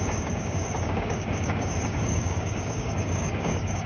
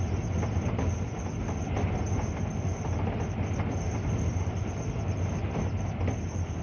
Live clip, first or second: second